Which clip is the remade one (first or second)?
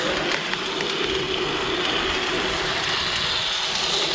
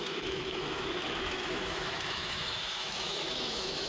second